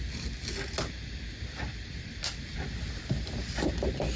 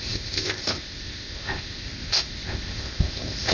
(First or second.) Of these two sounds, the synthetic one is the second